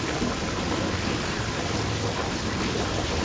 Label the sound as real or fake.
real